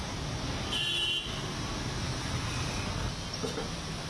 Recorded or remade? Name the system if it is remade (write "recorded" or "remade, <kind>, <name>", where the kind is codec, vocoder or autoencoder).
recorded